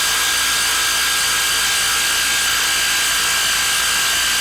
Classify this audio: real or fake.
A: real